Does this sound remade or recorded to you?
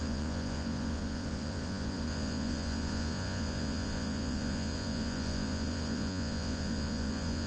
remade